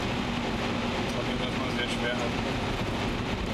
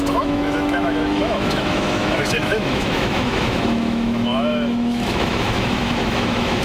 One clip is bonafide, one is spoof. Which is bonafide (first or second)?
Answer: first